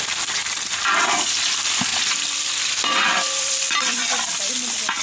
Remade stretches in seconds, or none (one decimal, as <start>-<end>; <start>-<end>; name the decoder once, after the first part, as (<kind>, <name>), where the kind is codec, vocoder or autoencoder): 1.9-4.5 (vocoder, BigVGAN v2)